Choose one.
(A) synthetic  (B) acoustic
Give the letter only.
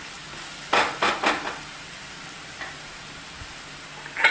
B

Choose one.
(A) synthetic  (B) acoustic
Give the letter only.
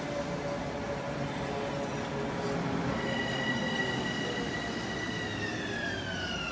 B